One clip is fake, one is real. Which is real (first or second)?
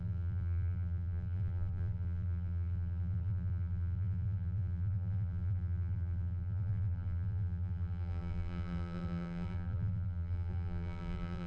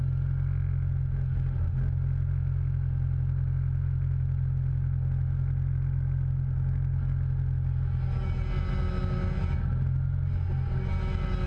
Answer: second